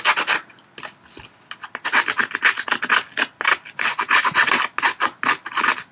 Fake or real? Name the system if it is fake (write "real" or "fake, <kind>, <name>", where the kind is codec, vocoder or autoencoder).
real